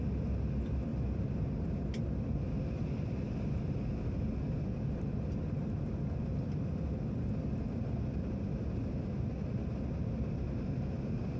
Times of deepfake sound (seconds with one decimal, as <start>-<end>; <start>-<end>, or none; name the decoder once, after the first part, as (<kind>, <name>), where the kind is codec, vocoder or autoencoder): 0.9-1.8 (vocoder, BigVGAN v2)